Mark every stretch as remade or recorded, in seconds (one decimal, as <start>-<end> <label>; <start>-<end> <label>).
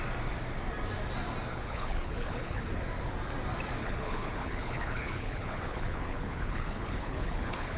0.0-1.5 recorded; 1.5-2.6 remade; 2.6-3.8 recorded; 3.8-7.8 remade